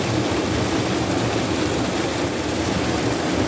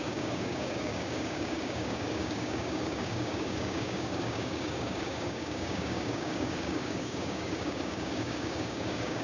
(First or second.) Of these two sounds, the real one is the first